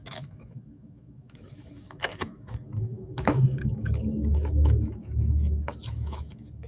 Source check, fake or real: fake